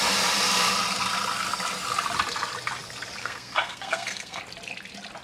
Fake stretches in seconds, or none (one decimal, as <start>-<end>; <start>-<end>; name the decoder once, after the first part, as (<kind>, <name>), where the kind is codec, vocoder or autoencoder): 3.2-4.4 (codec, SNAC)